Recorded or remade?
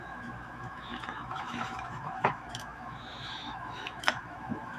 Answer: remade